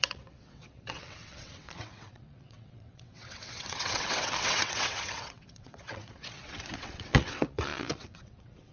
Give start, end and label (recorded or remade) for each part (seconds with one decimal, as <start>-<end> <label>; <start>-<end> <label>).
0.0-8.7 remade